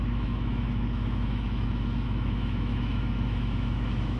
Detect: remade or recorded remade